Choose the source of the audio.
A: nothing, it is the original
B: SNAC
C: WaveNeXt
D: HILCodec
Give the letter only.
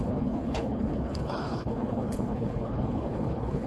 D